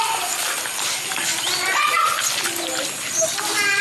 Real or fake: real